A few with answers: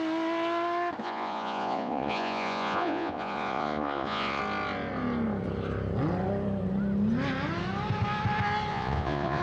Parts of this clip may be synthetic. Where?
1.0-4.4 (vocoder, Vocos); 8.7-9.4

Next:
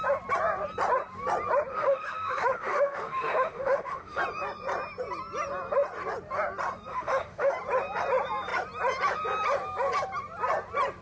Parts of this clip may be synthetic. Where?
1.7-4.2 (autoencoder, DAC-VAE); 6.9-7.5

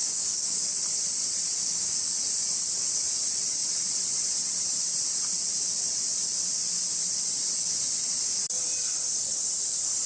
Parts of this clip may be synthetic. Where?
0.0-0.6 (codec, DAC); 1.6-2.1

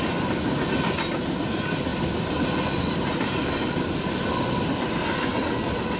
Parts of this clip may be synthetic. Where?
none

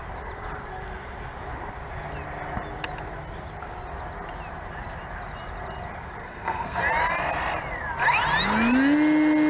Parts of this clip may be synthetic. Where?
6.2-6.8 (codec, SNAC)